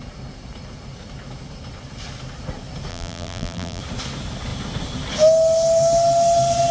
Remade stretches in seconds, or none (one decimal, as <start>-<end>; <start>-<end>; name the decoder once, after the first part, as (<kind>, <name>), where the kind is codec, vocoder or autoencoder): 2.9-3.8 (vocoder, BigVGAN v2)

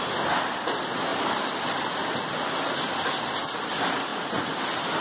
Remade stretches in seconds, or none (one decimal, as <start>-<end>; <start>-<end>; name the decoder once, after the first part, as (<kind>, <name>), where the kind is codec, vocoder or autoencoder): 1.1-2.3 (vocoder, BigVGAN v2)

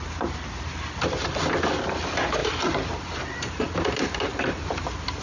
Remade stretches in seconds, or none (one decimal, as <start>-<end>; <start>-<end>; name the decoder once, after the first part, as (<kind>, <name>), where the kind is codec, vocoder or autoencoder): 2.4-5.2 (vocoder, BigVGAN v2)

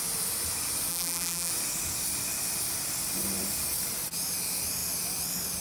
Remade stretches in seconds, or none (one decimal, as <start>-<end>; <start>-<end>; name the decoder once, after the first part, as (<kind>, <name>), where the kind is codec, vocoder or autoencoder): 0.9-1.5 (vocoder, BigVGAN v2)